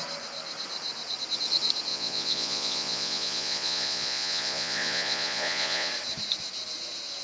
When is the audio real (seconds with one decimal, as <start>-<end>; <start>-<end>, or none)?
0.0-1.9; 5.9-7.2